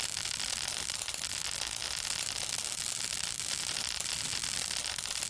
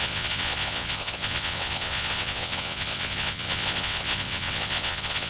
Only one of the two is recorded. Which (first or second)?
first